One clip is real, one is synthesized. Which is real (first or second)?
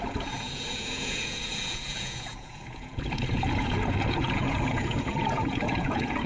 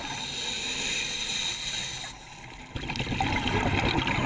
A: second